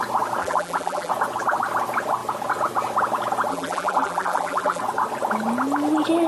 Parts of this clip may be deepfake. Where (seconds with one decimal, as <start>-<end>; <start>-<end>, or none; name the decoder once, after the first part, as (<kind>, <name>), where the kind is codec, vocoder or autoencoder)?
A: 0.4-1.1 (vocoder, BigVGAN v2); 3.5-4.8